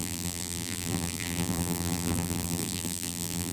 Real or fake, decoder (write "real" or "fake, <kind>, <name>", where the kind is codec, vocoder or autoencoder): fake, vocoder, BigVGAN v2